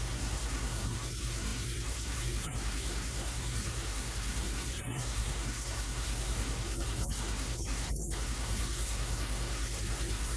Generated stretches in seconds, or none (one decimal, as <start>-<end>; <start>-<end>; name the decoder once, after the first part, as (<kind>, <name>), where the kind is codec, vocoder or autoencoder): 0.0-10.4 (codec, SNAC)